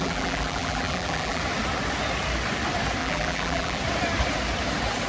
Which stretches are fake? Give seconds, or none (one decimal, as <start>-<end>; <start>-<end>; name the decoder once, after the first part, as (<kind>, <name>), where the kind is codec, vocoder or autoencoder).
0.0-1.4 (vocoder, BigVGAN v2); 3.0-3.8